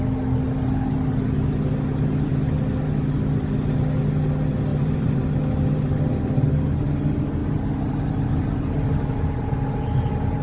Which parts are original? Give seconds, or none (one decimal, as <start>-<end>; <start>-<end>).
0.0-4.7; 5.2-10.4